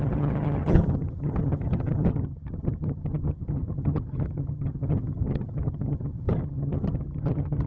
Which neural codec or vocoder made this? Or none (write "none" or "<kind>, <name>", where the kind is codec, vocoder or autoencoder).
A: vocoder, HiFi-GAN